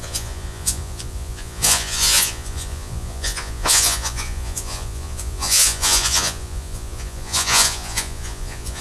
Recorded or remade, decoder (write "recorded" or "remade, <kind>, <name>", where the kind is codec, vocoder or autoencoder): remade, vocoder, Vocos